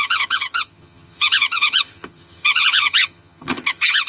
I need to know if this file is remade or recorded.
remade